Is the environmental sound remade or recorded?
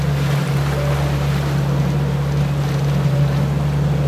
recorded